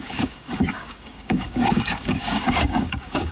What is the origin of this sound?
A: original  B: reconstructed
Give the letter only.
B